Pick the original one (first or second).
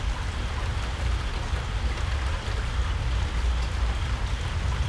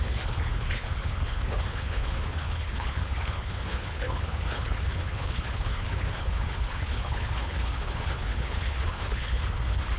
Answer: first